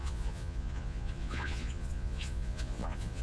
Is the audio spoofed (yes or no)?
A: yes